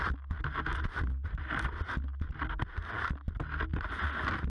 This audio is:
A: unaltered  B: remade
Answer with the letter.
A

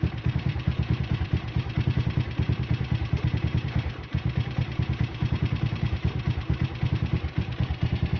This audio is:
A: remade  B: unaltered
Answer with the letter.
A